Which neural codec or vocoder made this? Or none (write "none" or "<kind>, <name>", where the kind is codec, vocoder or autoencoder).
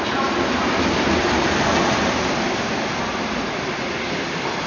none